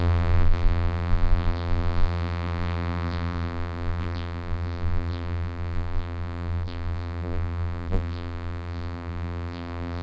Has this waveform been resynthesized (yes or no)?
yes